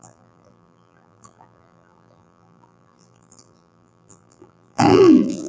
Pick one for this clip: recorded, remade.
remade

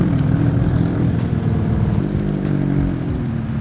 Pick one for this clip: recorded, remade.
remade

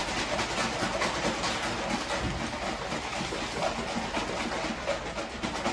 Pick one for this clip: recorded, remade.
recorded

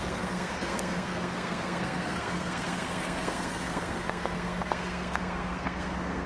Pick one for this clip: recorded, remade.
remade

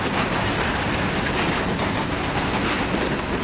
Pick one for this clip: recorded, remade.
recorded